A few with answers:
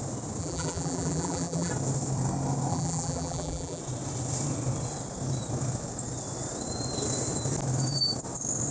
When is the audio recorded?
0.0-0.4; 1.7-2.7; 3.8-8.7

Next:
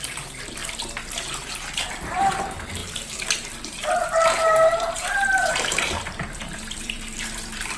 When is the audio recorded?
0.6-1.5

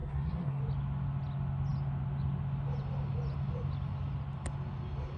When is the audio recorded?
0.6-5.2

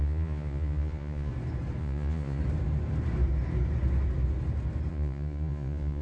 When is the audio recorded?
1.3-1.8; 2.4-4.9

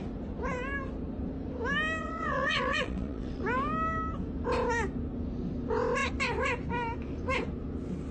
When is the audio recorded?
0.0-2.0; 3.4-8.1

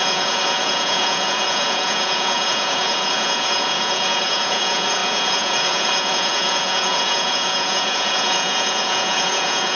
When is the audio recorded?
none